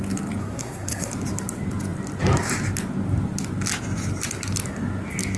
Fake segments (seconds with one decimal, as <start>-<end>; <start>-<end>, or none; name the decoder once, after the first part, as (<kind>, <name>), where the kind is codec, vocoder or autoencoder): 0.4-1.1 (codec, SNAC)